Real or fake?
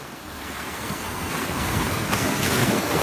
fake